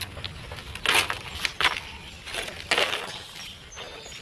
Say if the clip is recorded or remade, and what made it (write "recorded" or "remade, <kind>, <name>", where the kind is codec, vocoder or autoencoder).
recorded